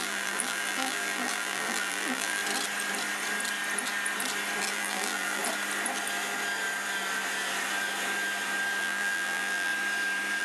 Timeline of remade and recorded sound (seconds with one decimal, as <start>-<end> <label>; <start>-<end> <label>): 0.0-2.4 remade; 2.4-4.7 recorded; 4.7-5.4 remade; 5.4-8.8 recorded; 8.8-9.7 remade; 9.7-10.4 recorded